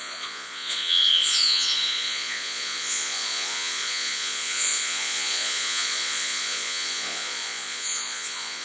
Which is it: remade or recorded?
remade